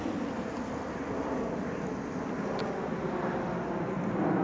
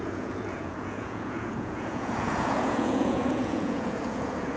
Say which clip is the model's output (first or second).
second